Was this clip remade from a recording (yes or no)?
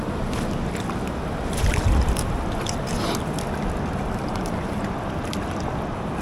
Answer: no